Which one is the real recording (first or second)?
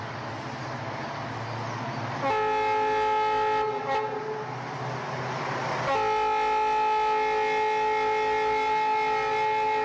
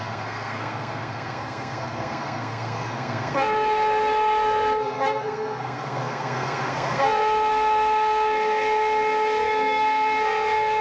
first